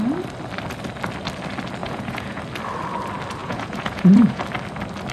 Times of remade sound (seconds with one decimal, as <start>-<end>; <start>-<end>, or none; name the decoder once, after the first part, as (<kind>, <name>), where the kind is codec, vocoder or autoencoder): 1.8-2.4 (vocoder, Vocos); 3.4-4.4